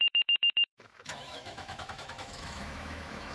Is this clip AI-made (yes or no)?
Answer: yes